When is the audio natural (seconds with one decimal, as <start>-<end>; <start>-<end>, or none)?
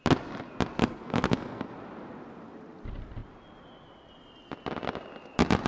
0.0-0.8; 1.7-5.7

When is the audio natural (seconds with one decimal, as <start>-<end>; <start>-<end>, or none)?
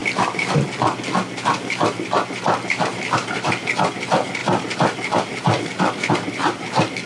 0.0-7.1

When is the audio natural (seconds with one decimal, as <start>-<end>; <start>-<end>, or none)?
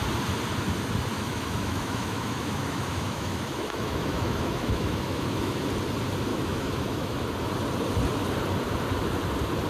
0.0-1.1; 5.6-6.3; 7.2-9.7